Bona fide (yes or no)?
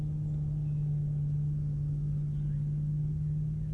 yes